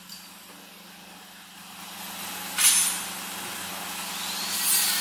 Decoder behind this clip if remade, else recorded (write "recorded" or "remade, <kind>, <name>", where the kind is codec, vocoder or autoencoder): recorded